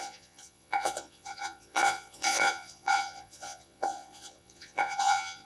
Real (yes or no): no